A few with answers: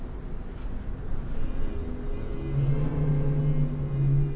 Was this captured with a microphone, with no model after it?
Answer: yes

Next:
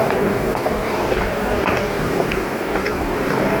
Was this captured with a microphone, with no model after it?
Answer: no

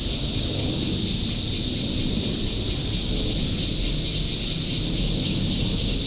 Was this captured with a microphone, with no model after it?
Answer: yes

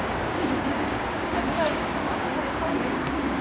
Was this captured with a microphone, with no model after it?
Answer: no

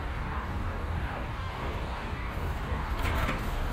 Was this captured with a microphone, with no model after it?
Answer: no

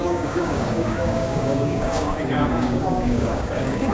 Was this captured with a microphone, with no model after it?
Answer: no